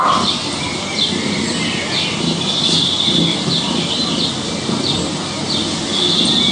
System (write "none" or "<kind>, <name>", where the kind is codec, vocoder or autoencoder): none